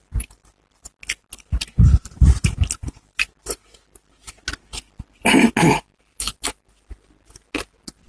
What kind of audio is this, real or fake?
real